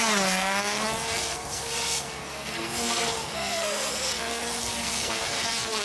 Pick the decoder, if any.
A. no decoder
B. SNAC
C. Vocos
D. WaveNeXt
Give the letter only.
B